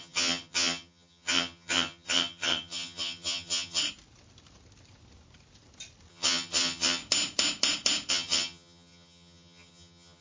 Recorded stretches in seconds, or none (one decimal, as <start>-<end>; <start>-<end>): 3.8-6.1; 7.0-8.1

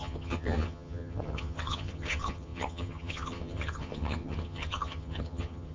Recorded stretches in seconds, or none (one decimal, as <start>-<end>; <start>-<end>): none

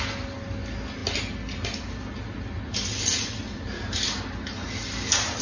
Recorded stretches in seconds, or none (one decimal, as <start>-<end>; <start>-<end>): 0.0-5.4